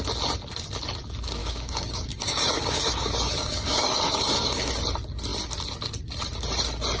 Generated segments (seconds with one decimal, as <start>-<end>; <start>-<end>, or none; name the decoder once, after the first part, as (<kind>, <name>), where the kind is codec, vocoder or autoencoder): 1.4-4.7 (codec, DAC)